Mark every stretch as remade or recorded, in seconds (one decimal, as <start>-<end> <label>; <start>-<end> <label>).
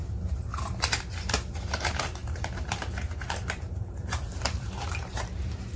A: 0.0-5.8 remade